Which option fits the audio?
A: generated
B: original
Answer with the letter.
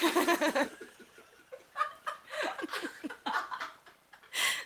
A